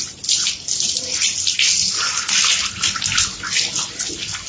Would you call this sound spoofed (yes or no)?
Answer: no